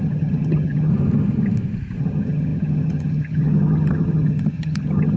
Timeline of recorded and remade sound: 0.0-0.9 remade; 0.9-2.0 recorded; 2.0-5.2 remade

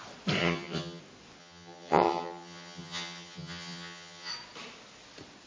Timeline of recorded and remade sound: 0.0-0.4 recorded; 0.4-1.0 remade; 1.0-1.4 recorded; 1.4-4.3 remade; 4.3-5.5 recorded

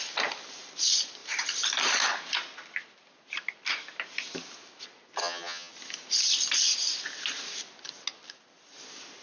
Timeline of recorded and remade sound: 0.0-5.2 recorded; 5.2-5.7 remade; 5.7-9.2 recorded

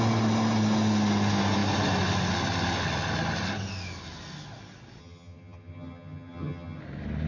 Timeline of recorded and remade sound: 0.0-5.0 recorded; 5.0-6.8 remade; 6.8-7.3 recorded

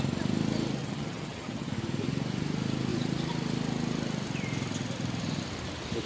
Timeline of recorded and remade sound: 0.0-0.8 recorded; 0.8-1.7 remade; 1.7-6.1 recorded

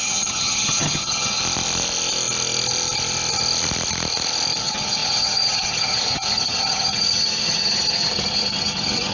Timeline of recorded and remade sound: 0.0-1.4 remade; 1.4-4.6 recorded; 4.6-9.1 remade

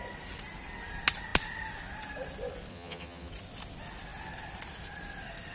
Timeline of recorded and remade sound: 0.0-2.7 recorded; 2.7-3.3 remade; 3.3-5.5 recorded